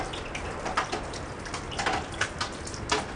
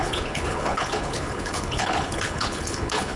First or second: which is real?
first